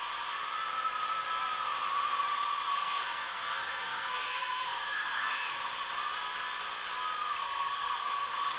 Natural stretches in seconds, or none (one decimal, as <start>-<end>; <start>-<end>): 0.0-2.7; 5.6-7.4